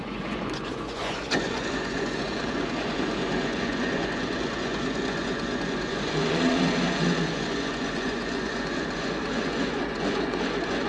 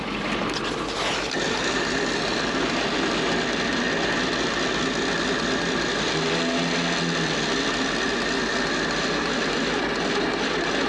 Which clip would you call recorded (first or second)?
second